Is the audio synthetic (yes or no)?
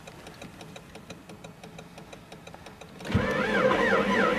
no